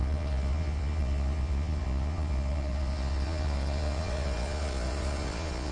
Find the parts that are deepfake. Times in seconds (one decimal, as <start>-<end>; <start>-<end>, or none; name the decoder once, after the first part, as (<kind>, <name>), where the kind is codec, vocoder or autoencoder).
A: 0.0-5.7 (vocoder, Vocos)